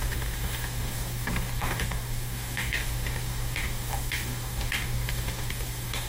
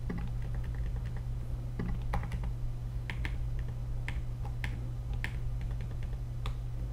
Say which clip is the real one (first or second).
second